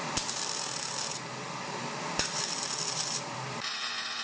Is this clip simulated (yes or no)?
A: yes